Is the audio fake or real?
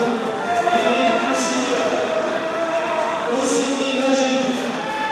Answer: fake